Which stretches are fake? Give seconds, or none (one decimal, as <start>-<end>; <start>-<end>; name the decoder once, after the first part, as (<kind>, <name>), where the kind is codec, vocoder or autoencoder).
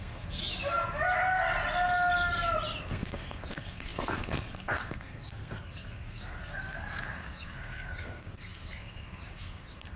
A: 0.0-0.4 (codec, SNAC); 2.8-10.0